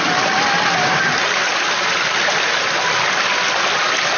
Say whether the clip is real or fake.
real